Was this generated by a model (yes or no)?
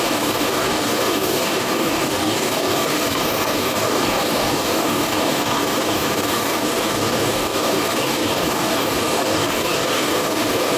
yes